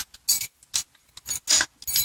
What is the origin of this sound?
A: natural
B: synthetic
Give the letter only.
A